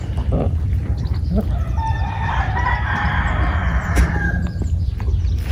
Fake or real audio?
fake